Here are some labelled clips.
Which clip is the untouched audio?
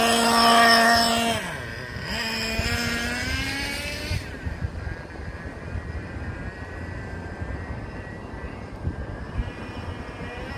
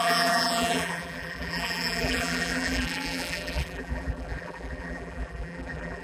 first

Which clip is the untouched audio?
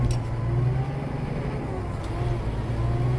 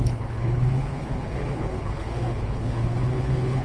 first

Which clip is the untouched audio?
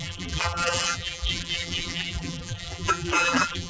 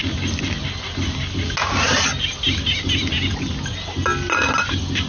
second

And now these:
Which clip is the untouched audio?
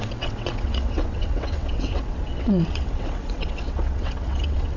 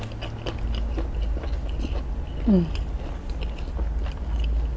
second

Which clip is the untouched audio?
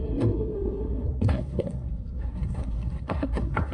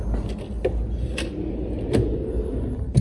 second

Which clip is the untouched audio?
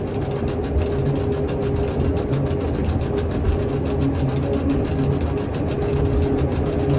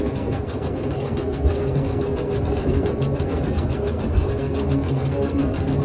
first